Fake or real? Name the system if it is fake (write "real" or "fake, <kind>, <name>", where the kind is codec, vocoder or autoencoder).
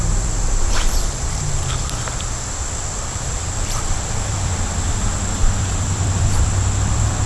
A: fake, vocoder, BigVGAN v2